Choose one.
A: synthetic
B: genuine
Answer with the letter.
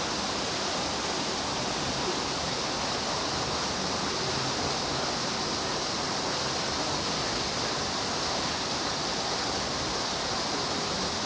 B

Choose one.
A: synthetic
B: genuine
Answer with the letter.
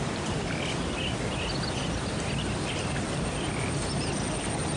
B